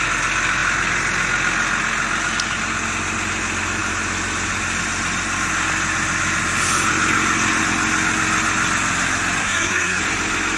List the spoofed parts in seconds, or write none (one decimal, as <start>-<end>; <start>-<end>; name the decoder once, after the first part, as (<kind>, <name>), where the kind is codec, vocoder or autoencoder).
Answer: 9.4-10.0 (codec, SNAC)

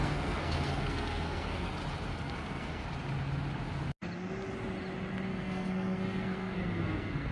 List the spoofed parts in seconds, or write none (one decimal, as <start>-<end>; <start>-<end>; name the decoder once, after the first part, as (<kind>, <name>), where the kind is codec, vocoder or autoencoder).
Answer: 0.0-1.7 (codec, SNAC); 2.1-2.8; 5.3-7.3

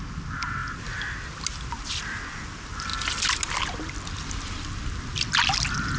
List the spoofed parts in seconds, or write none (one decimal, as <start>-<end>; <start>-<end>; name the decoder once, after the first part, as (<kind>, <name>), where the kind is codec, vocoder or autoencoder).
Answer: 0.6-1.2 (vocoder, BigVGAN v2)